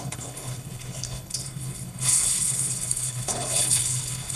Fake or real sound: fake